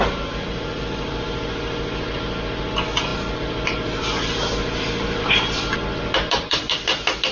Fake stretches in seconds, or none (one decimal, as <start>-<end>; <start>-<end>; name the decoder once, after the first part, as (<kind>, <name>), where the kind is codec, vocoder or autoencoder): none

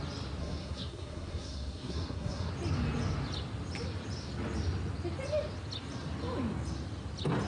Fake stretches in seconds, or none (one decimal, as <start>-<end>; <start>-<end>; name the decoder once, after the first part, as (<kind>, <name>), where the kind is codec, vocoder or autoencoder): 0.4-2.5 (codec, SNAC)